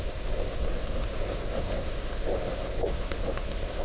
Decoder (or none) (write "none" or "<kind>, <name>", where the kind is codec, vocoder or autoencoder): codec, SNAC